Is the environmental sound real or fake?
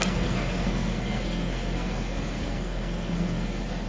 fake